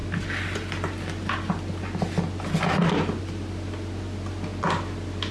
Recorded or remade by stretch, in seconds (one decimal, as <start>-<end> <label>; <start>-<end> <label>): 0.0-5.3 recorded